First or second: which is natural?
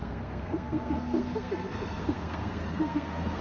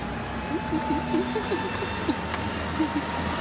second